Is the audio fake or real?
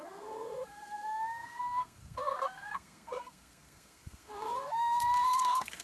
fake